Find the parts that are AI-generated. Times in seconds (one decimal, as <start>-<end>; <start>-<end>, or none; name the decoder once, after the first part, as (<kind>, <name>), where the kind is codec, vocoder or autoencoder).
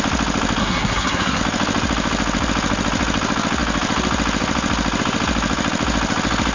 0.6-1.4 (codec, SNAC)